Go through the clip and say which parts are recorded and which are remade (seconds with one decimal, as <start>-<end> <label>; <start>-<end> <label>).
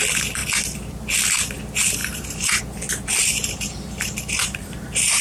0.0-2.0 recorded; 2.0-2.6 remade; 2.6-3.2 recorded; 3.2-5.2 remade